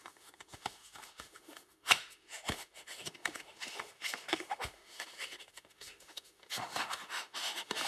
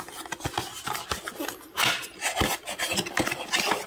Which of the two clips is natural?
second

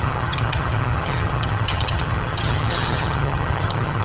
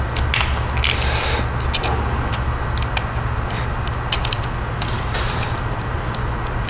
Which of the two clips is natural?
second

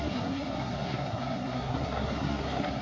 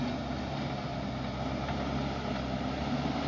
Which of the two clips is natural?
second